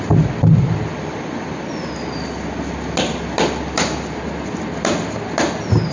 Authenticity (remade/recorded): recorded